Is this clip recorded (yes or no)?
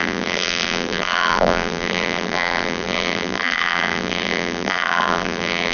no